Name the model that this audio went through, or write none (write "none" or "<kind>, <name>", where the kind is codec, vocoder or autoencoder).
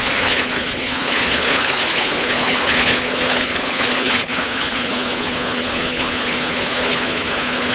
codec, HILCodec